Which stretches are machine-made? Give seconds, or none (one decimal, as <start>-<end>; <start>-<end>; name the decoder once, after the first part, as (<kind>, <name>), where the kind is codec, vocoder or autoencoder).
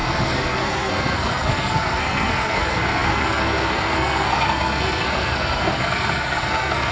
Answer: 0.0-6.9 (codec, SNAC)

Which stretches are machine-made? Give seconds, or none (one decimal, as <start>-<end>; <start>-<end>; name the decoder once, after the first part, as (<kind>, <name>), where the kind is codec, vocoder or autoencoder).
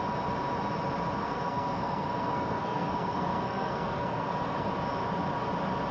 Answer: 1.2-4.7 (codec, SNAC)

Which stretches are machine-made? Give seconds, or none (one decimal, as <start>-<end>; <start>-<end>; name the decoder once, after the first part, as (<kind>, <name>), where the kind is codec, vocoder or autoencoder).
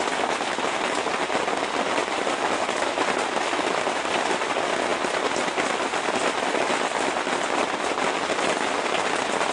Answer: none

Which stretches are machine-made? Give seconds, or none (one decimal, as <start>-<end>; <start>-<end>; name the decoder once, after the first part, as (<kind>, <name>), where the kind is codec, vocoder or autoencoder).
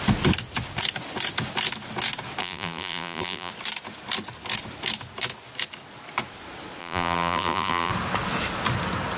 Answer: 2.4-3.5 (vocoder, BigVGAN v2); 6.8-7.9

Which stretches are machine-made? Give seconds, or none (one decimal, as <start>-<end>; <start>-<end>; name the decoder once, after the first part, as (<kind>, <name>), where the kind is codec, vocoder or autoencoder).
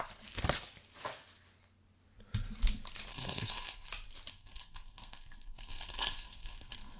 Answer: 3.1-3.9 (codec, SNAC); 4.3-7.0